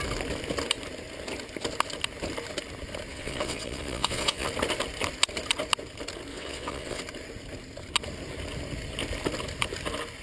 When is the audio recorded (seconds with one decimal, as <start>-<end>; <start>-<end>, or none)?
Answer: 0.0-3.1; 4.5-6.3; 7.0-10.2

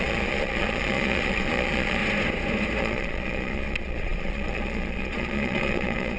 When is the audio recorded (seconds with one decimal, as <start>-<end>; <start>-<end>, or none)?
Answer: 2.0-2.8

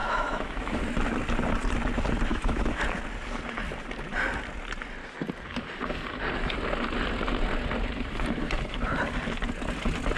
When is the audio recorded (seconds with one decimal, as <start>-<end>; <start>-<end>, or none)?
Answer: 0.8-2.3; 2.8-10.2

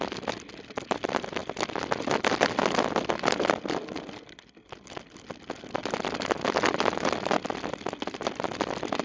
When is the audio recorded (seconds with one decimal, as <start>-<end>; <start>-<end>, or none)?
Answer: 0.0-9.0

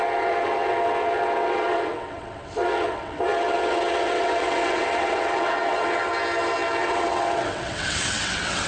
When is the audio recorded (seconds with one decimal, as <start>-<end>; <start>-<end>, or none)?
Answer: 6.1-6.8

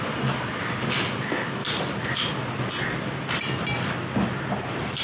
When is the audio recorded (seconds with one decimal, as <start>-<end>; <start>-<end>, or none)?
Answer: 0.0-5.0

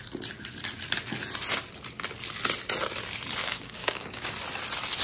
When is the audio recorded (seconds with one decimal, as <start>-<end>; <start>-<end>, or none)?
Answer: 0.0-3.4; 4.3-5.0